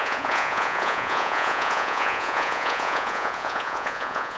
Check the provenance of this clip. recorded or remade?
remade